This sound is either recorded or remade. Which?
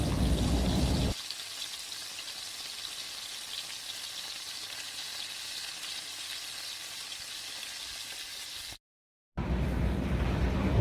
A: recorded